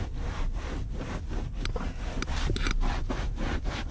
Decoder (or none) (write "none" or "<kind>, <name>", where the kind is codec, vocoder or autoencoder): none